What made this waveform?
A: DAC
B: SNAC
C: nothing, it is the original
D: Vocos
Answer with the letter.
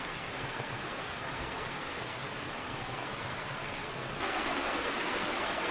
B